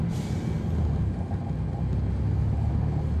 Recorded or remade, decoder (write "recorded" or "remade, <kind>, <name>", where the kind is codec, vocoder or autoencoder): recorded